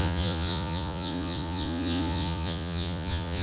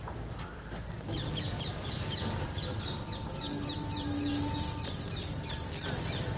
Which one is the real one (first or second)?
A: second